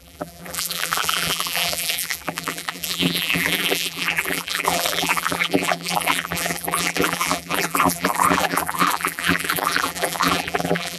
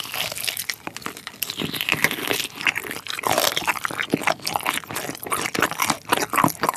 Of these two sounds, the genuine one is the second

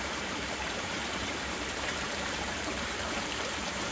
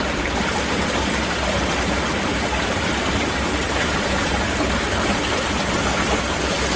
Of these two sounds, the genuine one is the second